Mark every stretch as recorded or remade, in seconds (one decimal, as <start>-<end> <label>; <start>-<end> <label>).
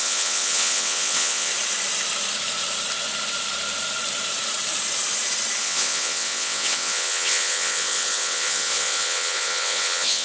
0.0-1.5 remade; 1.5-5.6 recorded; 5.6-10.2 remade